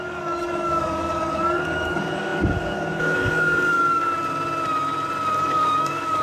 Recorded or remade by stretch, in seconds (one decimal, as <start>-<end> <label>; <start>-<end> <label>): 0.0-4.2 remade; 4.2-5.4 recorded; 5.4-6.2 remade